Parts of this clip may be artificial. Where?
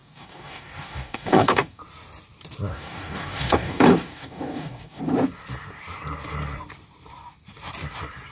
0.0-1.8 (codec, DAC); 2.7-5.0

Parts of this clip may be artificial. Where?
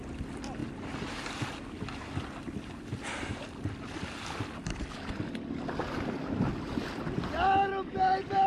none